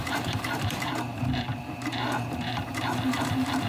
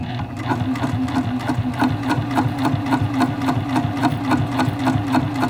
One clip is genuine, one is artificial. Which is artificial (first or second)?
first